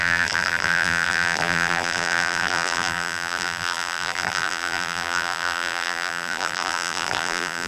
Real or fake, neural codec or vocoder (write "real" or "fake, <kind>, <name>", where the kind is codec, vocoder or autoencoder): fake, vocoder, BigVGAN v2